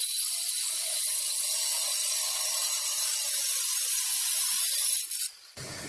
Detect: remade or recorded recorded